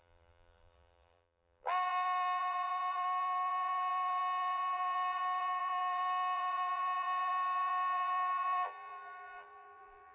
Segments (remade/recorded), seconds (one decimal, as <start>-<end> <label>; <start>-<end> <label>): 0.0-10.1 remade